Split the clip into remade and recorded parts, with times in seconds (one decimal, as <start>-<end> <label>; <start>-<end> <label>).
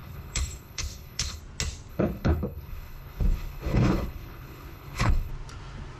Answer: 0.0-1.4 remade; 1.4-1.9 recorded; 1.9-5.3 remade; 5.3-6.0 recorded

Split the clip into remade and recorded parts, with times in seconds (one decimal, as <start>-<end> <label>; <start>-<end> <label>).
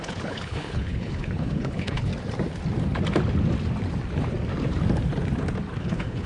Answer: 0.0-2.1 remade; 2.1-5.8 recorded; 5.8-6.3 remade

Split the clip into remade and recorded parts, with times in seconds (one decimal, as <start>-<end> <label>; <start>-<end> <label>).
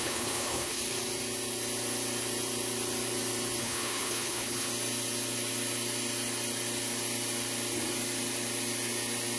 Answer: 0.0-0.8 remade; 0.8-3.6 recorded; 3.6-4.7 remade; 4.7-9.4 recorded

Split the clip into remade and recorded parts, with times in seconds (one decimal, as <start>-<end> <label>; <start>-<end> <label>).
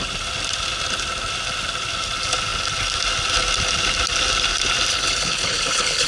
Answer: 0.0-4.9 recorded; 4.9-6.1 remade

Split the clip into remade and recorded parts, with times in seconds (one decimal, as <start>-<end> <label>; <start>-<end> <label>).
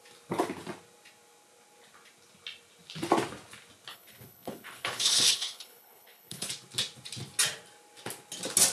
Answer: 0.0-3.9 recorded; 3.9-6.5 remade; 6.5-8.7 recorded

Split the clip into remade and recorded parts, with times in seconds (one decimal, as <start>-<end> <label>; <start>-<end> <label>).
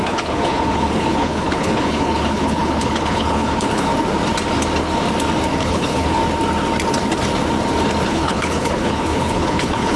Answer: 0.0-3.9 remade; 3.9-5.6 recorded; 5.6-6.2 remade; 6.2-8.1 recorded; 8.1-10.0 remade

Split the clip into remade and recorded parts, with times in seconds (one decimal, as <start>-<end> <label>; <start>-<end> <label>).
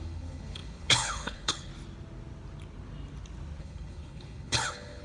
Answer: 0.0-1.7 remade; 1.7-3.6 recorded; 3.6-5.0 remade